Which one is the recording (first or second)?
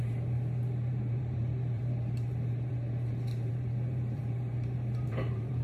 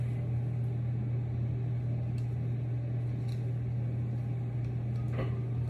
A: second